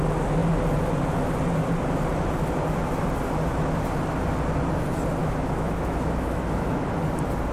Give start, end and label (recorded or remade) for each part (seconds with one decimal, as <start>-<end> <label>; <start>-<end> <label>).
0.0-5.2 recorded; 5.2-6.9 remade; 6.9-7.5 recorded